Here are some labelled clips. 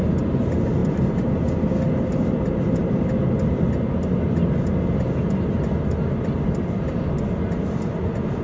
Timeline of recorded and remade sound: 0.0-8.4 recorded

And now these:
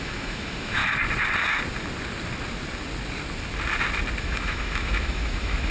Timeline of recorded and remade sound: 0.0-0.8 remade; 0.8-4.2 recorded; 4.2-5.7 remade

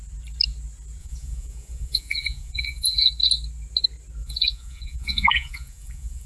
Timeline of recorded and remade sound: 0.0-1.0 recorded; 1.0-3.1 remade; 3.1-4.2 recorded; 4.2-6.3 remade

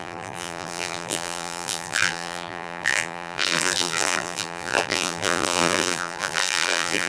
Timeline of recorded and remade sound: 0.0-7.1 remade

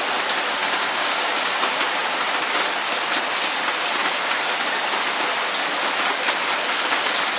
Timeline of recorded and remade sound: 0.0-0.6 recorded; 0.6-1.7 remade; 1.7-7.4 recorded

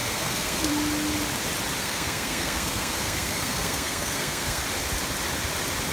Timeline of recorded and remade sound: 0.0-0.7 remade; 0.7-1.8 recorded; 1.8-4.6 remade; 4.6-5.9 recorded